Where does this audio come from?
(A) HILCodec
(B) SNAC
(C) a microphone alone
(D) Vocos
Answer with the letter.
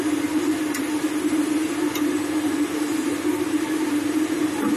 C